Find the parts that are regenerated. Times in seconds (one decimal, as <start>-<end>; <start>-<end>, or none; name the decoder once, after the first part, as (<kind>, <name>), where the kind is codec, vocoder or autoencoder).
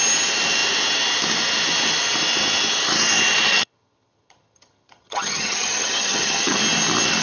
3.5-6.6 (vocoder, HiFi-GAN)